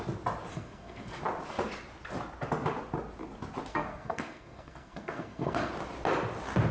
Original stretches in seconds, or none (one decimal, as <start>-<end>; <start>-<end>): 0.0-0.5; 1.2-3.7; 5.7-6.7